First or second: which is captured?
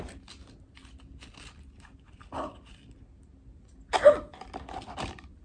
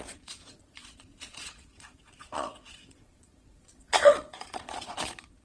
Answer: first